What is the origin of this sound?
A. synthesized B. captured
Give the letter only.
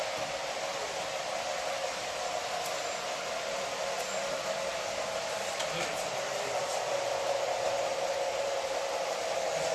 B